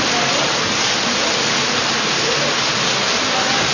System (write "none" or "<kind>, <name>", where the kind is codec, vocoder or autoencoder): none